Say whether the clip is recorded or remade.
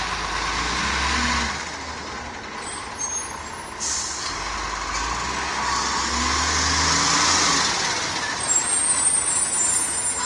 recorded